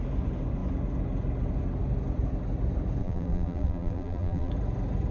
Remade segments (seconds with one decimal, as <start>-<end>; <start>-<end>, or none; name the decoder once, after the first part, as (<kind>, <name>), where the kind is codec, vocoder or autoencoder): 3.0-4.5 (vocoder, BigVGAN v2)